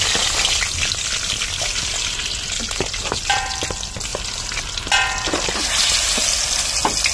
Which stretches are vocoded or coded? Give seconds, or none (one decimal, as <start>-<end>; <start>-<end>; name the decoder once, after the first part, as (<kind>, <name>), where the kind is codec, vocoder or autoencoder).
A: 4.1-4.6 (vocoder, BigVGAN v2)